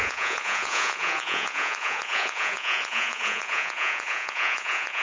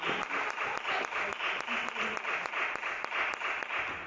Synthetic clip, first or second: first